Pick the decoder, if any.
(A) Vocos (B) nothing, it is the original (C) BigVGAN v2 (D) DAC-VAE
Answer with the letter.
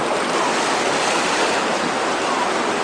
B